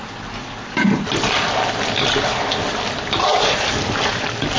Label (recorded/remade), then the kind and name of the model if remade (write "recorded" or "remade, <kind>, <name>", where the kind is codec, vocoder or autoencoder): recorded